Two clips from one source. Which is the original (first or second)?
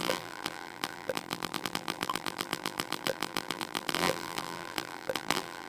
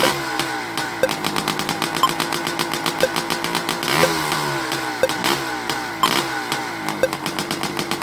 second